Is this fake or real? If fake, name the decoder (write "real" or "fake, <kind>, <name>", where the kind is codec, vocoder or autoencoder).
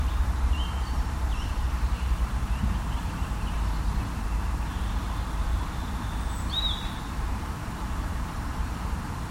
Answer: fake, vocoder, BigVGAN v2